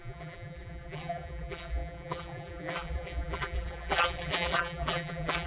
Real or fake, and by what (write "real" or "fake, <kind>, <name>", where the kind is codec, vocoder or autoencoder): fake, vocoder, BigVGAN v2